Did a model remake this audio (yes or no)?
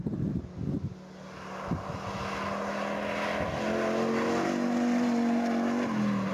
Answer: no